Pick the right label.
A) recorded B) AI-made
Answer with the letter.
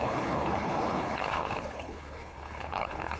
B